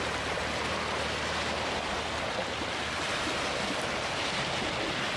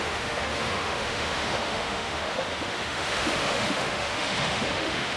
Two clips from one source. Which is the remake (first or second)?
second